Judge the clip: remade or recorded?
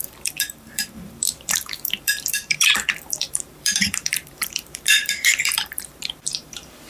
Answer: remade